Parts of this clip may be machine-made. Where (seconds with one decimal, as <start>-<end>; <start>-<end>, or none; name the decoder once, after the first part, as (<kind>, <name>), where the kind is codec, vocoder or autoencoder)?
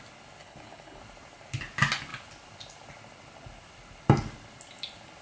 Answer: 0.4-1.0 (codec, HILCodec)